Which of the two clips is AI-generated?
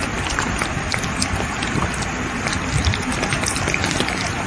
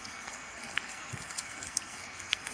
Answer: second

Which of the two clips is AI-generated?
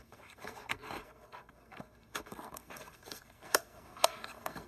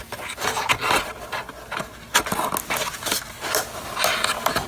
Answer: first